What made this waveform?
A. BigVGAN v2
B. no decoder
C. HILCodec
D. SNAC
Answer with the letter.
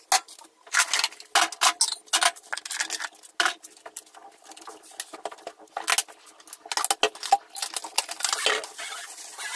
B